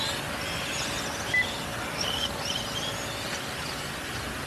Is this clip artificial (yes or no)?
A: no